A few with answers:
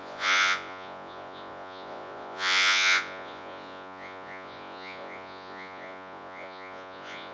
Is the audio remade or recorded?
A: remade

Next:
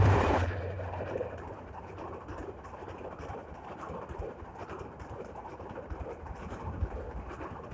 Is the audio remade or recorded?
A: remade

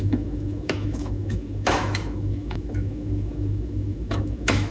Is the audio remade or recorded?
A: remade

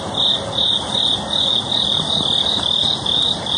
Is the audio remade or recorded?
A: recorded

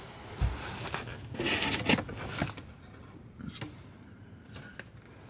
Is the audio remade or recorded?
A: recorded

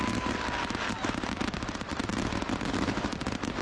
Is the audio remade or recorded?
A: recorded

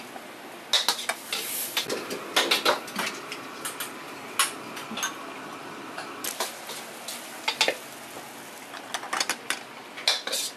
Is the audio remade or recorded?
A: recorded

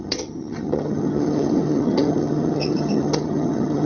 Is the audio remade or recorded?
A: remade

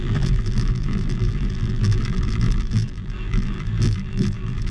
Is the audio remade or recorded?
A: remade